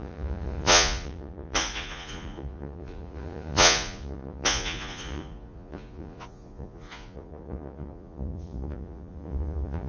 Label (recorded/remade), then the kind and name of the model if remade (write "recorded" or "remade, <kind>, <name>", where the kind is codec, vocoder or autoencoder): remade, vocoder, Vocos